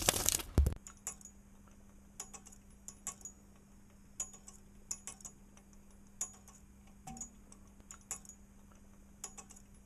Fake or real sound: real